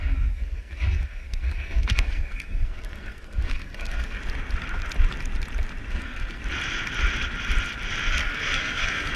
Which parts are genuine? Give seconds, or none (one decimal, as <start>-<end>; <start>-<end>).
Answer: 4.2-5.9; 6.4-8.1